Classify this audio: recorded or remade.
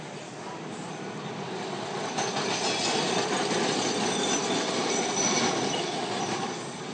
recorded